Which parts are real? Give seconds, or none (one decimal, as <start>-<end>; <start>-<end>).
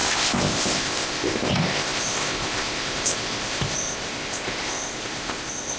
none